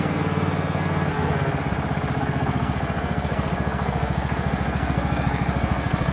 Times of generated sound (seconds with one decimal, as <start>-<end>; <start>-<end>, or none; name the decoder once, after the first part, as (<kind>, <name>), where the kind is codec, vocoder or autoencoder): 0.0-1.5 (codec, SNAC); 2.2-6.1